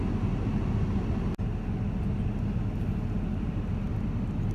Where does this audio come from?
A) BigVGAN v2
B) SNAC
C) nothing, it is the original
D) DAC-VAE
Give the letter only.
C